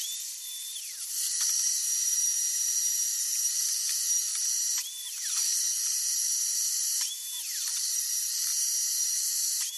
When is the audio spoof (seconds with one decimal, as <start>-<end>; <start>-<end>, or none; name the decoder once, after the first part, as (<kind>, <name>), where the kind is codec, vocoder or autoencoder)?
0.0-4.3 (vocoder, BigVGAN v2); 5.0-5.5; 7.0-8.5; 9.0-9.8